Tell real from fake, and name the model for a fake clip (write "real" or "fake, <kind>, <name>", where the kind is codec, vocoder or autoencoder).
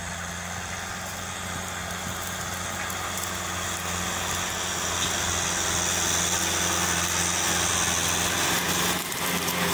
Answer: real